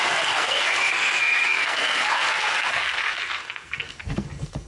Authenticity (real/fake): fake